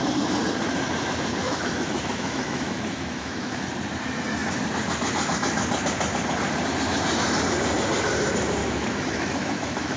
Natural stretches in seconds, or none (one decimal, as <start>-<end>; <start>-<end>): 0.0-1.4; 3.7-8.6